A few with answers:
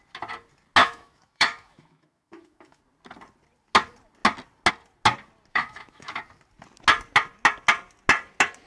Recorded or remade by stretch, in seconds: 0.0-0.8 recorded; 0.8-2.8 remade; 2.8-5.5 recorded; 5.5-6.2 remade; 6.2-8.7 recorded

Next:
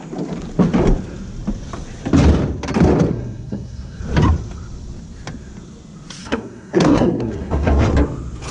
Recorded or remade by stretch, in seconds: 0.0-3.1 recorded; 3.1-4.0 remade; 4.0-6.2 recorded; 6.2-7.8 remade; 7.8-8.5 recorded

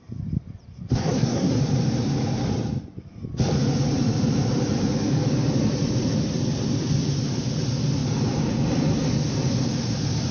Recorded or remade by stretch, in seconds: 0.0-1.0 recorded; 1.0-1.6 remade; 1.6-10.3 recorded